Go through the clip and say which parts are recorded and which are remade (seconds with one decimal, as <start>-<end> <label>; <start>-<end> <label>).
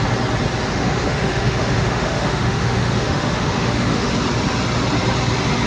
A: 0.0-0.7 recorded; 0.7-4.1 remade; 4.1-5.7 recorded